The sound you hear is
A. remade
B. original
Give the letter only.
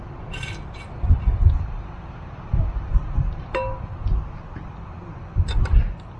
B